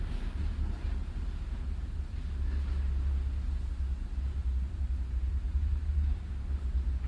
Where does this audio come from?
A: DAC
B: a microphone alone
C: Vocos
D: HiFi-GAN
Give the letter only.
B